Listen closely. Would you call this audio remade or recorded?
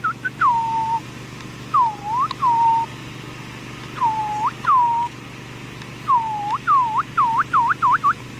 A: recorded